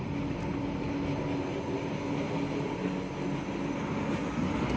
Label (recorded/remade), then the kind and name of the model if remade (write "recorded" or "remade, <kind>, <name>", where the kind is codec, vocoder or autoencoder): recorded